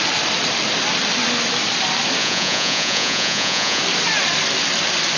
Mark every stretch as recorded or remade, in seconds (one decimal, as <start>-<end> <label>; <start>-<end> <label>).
0.0-2.2 recorded; 2.2-3.8 remade; 3.8-5.2 recorded